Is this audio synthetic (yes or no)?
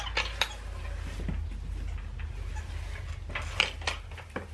no